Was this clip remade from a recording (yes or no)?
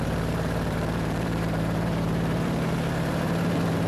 yes